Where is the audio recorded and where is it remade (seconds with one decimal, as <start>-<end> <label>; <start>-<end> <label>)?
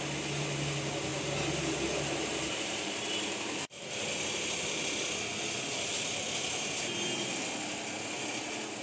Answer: 0.0-1.1 recorded; 1.1-4.8 remade; 4.8-8.8 recorded